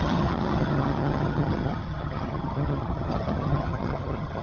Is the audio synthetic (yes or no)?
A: yes